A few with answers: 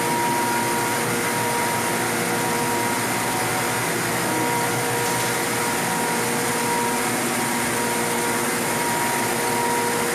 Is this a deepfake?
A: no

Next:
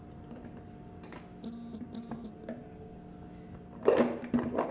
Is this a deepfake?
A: no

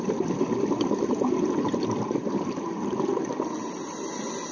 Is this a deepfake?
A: no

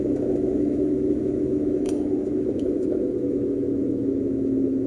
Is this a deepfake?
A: yes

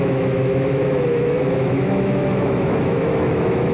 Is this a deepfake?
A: yes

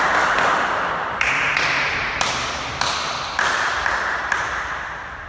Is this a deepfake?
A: no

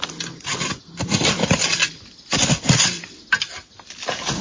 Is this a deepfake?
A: no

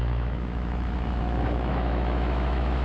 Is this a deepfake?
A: yes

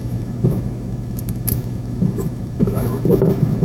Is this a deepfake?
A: yes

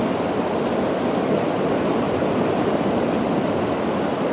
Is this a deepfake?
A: no